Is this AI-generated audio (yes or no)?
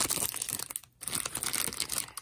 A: no